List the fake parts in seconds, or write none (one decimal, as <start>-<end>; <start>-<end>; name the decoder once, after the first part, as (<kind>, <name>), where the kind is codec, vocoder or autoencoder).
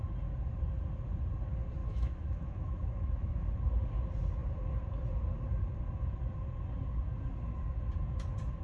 1.8-3.4 (autoencoder, DAC-VAE)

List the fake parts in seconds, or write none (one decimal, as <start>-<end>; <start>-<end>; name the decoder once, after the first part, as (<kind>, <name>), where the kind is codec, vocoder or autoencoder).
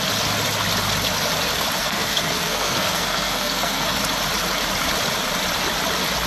1.8-4.0 (codec, SNAC)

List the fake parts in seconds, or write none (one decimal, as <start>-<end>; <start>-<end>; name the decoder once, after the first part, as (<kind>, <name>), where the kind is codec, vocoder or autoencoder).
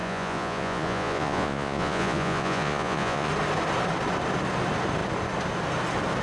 0.0-3.3 (vocoder, Vocos)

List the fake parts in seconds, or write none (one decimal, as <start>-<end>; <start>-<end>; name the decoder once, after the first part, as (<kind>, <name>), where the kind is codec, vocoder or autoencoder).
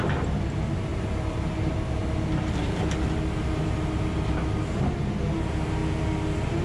none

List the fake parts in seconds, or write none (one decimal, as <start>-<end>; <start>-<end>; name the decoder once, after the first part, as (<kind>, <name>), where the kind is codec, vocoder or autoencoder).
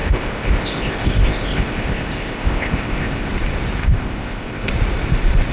0.0-3.3 (codec, ZipCodec); 3.8-4.7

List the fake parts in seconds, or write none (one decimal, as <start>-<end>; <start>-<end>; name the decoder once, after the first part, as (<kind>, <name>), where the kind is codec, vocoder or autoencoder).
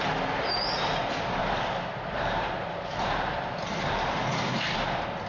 1.4-4.2 (vocoder, BigVGAN v2)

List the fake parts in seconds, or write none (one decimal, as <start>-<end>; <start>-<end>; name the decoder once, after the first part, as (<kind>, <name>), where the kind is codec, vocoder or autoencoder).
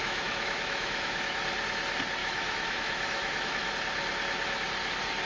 0.0-1.4 (autoencoder, DAC-VAE); 2.2-3.7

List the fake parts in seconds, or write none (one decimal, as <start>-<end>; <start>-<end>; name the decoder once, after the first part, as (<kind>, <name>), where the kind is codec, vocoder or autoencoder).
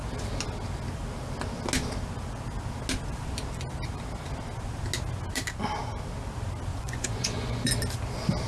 6.7-7.7 (vocoder, Vocos)